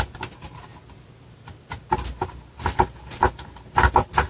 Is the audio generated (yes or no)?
no